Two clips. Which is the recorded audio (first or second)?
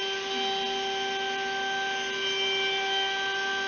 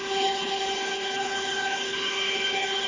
first